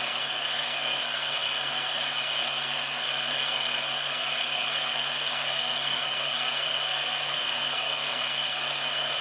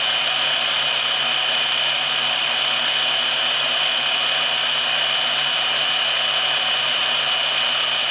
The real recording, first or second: second